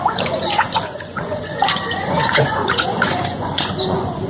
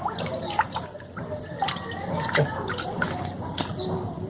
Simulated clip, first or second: first